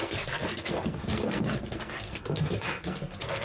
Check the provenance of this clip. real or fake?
fake